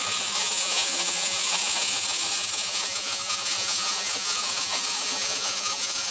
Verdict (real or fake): fake